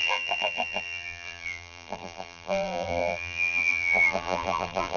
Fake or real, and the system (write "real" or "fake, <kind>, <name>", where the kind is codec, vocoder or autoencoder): fake, vocoder, BigVGAN v2